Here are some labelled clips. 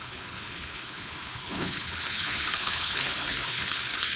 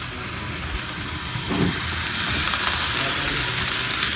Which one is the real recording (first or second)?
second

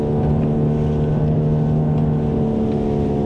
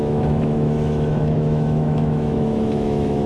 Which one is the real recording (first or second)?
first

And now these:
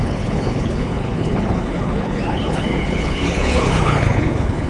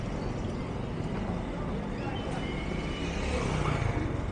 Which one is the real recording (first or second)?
second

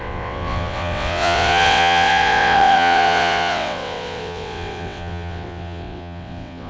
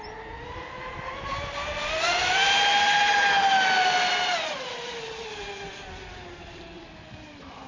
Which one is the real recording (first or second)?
second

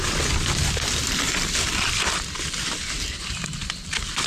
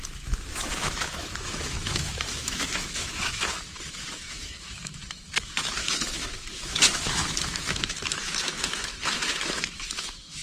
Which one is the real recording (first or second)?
first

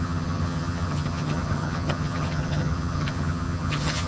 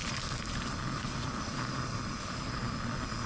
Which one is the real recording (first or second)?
second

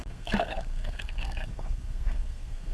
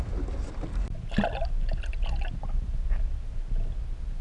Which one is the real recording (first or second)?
second